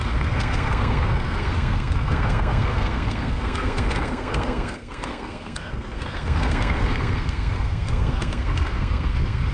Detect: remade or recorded remade